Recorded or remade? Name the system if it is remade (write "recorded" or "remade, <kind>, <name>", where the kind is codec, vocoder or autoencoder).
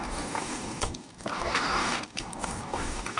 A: remade, codec, DAC